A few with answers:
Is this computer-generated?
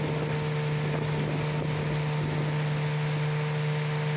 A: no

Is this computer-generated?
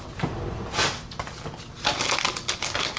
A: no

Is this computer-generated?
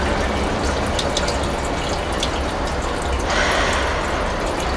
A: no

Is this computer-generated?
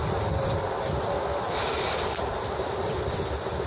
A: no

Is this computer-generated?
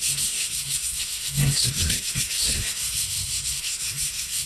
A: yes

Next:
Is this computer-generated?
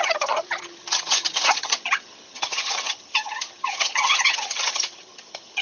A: yes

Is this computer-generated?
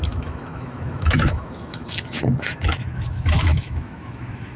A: yes